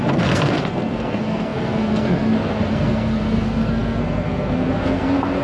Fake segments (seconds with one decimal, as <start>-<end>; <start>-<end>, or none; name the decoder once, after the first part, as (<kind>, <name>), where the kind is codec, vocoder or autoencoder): 0.0-5.4 (codec, SNAC)